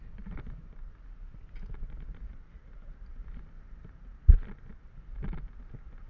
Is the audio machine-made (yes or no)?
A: no